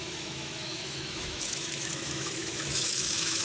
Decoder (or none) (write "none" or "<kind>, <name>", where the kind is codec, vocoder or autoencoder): autoencoder, DAC-VAE